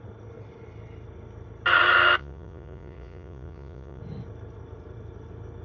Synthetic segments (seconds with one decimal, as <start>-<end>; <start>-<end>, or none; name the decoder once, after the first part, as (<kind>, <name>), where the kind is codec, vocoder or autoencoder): 2.2-4.0 (vocoder, Vocos)